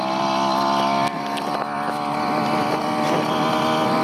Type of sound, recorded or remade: recorded